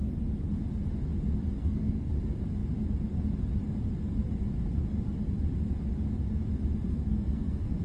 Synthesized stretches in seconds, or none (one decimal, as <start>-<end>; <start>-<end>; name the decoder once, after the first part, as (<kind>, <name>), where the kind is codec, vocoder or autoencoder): 1.6-2.1 (codec, SNAC); 6.9-7.8